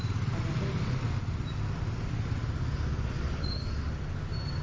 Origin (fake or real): real